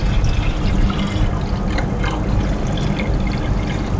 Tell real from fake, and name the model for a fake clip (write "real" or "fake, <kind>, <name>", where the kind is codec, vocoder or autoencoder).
real